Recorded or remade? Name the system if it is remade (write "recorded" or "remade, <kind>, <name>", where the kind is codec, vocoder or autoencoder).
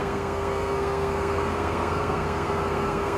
remade, codec, SNAC